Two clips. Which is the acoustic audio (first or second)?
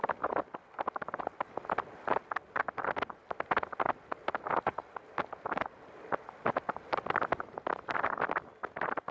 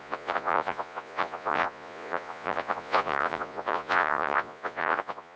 first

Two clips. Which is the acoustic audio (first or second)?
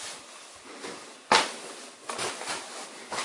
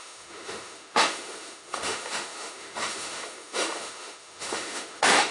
first